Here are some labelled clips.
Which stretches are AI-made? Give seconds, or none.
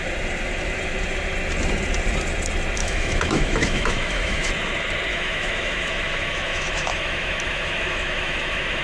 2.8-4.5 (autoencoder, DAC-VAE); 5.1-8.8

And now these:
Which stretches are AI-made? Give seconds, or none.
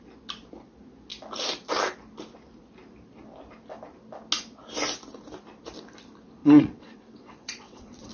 6.4-8.1 (vocoder, WaveNeXt)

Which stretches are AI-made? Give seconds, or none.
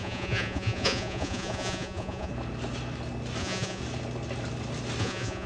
0.0-2.3 (vocoder, Vocos); 3.4-3.8; 5.0-5.5